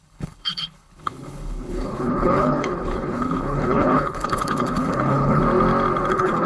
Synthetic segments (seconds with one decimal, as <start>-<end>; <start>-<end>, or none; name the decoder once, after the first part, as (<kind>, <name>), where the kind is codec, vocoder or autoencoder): 0.0-5.4 (codec, HILCodec); 6.1-6.5